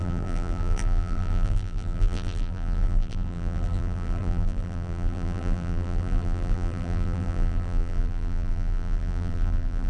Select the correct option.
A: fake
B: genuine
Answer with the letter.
A